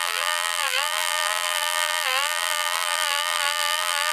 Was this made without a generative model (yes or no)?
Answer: no